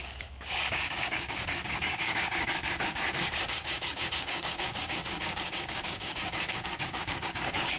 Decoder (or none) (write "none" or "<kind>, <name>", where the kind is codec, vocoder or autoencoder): codec, DAC